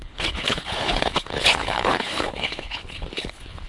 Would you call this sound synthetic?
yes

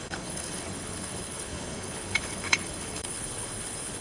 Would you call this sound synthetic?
yes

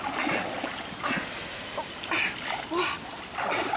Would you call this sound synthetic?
no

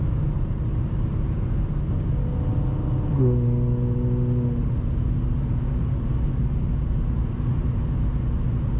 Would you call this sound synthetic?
no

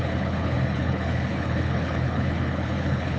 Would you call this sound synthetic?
yes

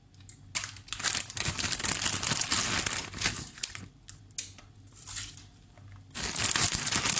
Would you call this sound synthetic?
no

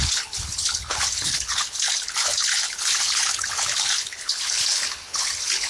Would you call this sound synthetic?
yes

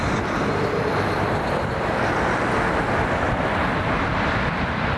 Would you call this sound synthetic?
no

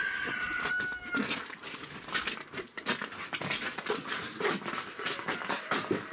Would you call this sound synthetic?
no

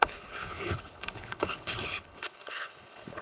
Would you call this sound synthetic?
yes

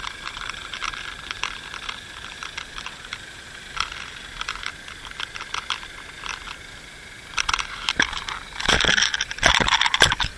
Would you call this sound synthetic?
no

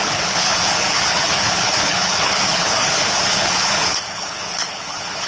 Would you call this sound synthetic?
yes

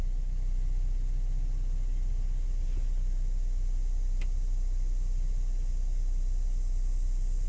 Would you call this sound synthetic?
no